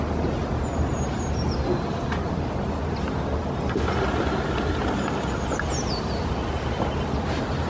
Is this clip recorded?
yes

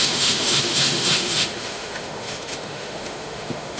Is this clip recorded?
no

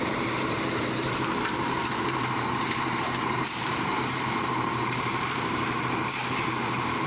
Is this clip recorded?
no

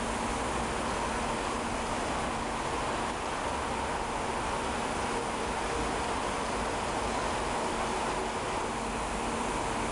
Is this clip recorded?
yes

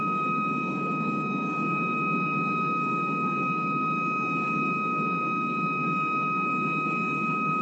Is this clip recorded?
no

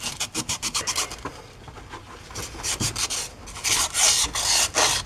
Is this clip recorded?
yes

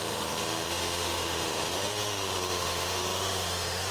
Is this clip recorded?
no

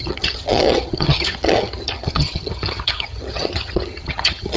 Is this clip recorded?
no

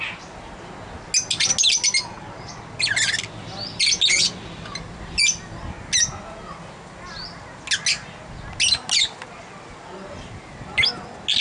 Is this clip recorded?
yes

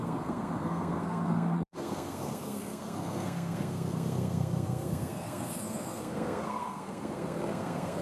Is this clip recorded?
no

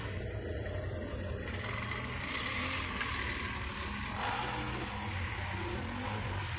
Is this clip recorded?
yes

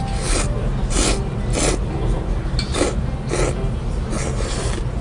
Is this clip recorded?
yes